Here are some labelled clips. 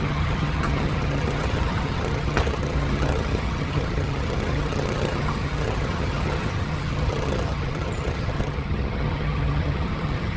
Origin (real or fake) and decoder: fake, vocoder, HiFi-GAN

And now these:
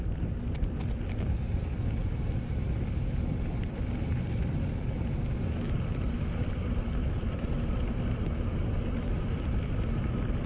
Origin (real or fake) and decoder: real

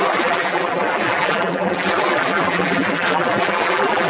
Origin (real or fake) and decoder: fake, vocoder, BigVGAN v2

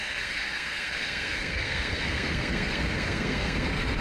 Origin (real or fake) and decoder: fake, codec, SNAC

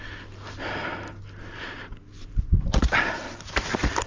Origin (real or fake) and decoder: real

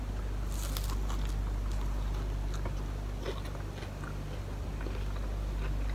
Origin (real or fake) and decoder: real